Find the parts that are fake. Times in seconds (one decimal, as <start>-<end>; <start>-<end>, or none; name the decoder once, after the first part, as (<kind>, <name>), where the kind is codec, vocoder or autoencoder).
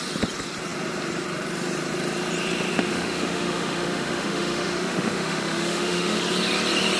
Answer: 2.7-6.2 (autoencoder, DAC-VAE)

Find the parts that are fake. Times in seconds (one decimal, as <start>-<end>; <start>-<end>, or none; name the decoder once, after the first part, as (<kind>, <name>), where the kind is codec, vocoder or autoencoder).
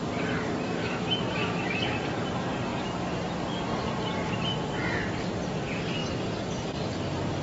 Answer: 0.8-1.8 (autoencoder, DAC-VAE)